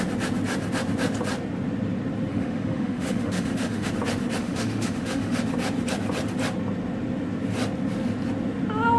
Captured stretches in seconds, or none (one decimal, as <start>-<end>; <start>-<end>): 0.0-2.3; 3.9-4.4; 5.4-9.0